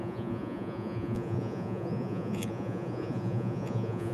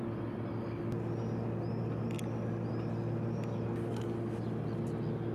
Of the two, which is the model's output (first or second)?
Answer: first